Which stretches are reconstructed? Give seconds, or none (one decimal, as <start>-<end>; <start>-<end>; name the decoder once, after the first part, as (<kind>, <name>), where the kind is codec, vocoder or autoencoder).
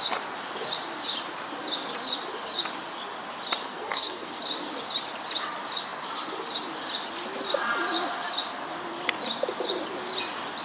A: 3.7-4.4 (codec, SNAC)